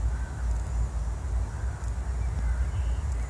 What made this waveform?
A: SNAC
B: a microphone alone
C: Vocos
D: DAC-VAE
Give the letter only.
B